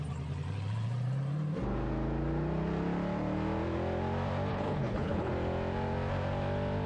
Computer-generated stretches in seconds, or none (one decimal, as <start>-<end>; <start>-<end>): 4.5-5.3